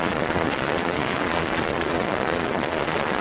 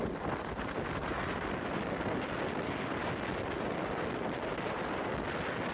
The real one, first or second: second